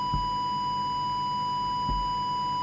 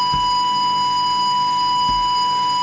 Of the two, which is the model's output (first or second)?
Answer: second